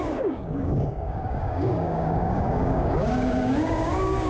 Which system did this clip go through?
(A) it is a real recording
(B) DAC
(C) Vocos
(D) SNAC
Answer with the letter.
B